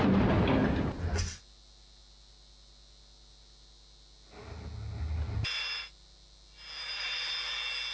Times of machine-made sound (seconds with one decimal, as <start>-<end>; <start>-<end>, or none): none

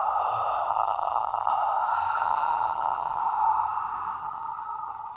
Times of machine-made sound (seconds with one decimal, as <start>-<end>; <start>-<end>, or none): 0.7-1.5; 2.1-3.2; 4.2-5.2

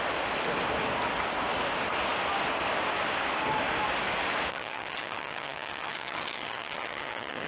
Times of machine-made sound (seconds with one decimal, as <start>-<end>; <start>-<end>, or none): 4.5-7.5